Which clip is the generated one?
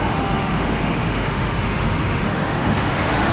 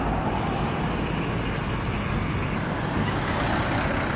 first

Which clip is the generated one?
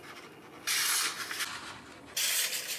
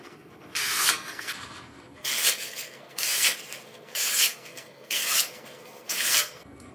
second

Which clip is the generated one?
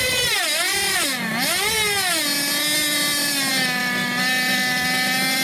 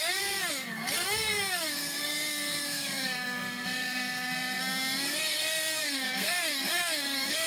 second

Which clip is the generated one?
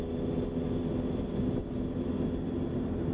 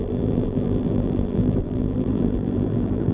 second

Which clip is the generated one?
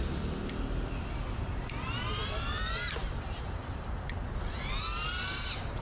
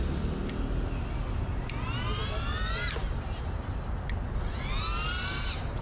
first